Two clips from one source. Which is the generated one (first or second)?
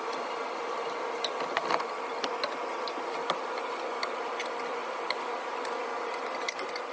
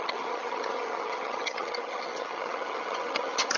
second